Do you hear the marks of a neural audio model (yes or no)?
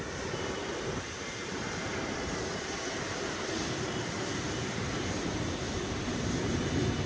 yes